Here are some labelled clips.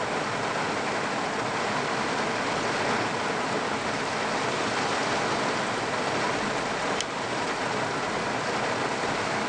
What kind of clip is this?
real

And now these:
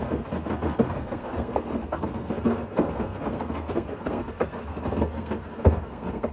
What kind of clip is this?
fake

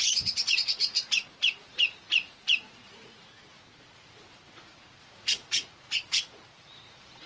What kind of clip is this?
fake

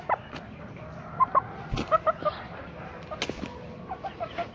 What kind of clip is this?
real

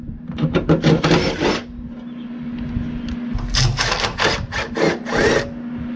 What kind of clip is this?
real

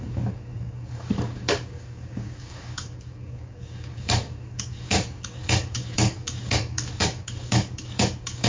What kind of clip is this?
fake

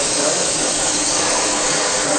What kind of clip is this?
fake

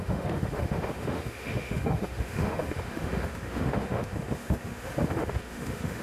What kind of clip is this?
fake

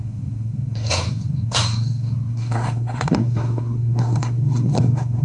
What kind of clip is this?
fake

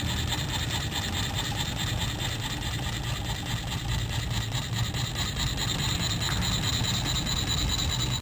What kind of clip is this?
real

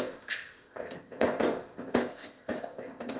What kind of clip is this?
fake